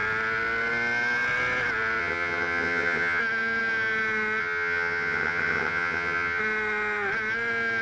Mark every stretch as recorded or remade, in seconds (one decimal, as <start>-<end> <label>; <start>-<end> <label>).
0.0-2.0 recorded; 2.0-3.2 remade; 3.2-4.4 recorded; 4.4-6.4 remade; 6.4-7.8 recorded